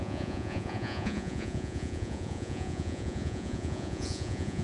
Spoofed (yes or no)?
yes